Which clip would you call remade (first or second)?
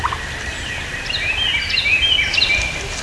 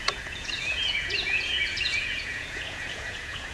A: second